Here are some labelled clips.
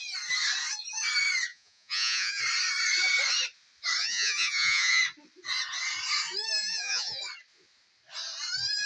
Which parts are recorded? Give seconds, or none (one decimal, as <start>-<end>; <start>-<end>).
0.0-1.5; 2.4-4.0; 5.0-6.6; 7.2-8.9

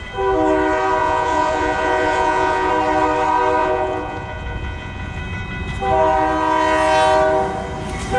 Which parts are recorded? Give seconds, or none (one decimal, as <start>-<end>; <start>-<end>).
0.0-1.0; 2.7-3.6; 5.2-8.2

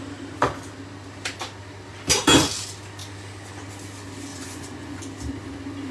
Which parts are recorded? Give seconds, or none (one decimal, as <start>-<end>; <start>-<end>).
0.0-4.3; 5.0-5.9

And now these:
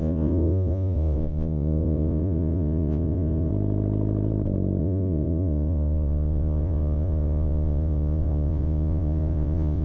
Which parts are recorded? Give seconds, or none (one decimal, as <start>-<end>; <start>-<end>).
3.5-4.8

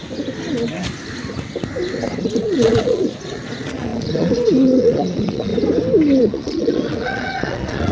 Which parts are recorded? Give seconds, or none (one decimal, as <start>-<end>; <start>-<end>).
0.0-2.4; 5.5-6.2

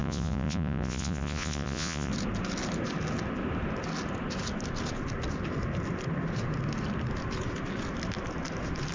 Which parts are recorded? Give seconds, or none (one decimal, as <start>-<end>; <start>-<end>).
2.1-8.9

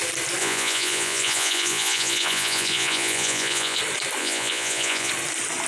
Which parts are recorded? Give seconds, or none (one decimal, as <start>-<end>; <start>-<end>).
0.0-0.4; 3.8-4.2; 5.1-5.7